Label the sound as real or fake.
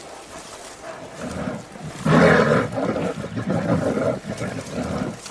real